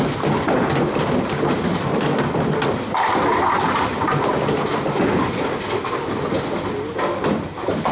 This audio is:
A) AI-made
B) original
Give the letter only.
B